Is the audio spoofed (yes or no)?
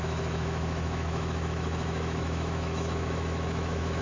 yes